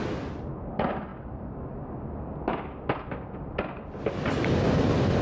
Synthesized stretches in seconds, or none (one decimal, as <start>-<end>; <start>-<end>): none